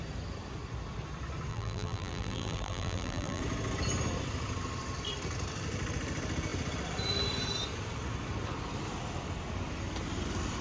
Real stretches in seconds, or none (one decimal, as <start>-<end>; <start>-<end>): 0.0-1.5; 3.4-10.6